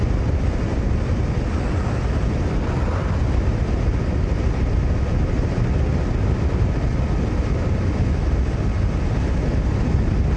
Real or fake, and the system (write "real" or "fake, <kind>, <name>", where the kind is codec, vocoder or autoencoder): real